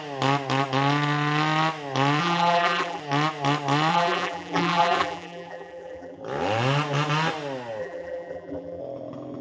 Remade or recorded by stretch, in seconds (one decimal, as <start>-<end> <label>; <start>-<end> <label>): 0.0-2.2 recorded; 2.2-3.0 remade; 3.0-3.9 recorded; 3.9-6.2 remade; 6.2-7.8 recorded; 7.8-8.8 remade; 8.8-9.4 recorded